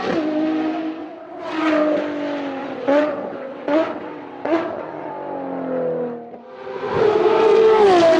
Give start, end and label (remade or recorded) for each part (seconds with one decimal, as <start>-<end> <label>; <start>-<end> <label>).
0.0-1.0 recorded; 1.0-1.7 remade; 1.7-2.6 recorded; 2.6-5.1 remade; 5.1-8.2 recorded